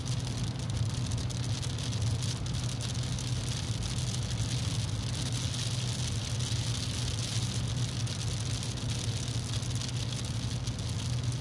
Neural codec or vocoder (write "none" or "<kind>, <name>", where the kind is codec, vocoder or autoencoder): none